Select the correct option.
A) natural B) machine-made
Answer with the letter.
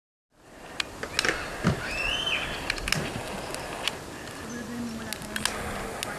A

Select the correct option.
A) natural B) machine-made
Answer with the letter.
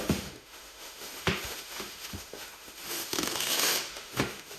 B